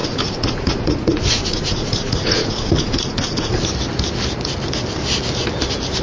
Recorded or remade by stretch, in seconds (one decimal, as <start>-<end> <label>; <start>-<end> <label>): 0.0-3.6 remade; 3.6-6.0 recorded